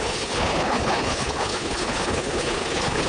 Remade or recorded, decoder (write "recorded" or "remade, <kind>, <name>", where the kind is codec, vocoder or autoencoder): remade, codec, HILCodec